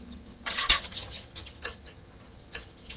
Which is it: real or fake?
fake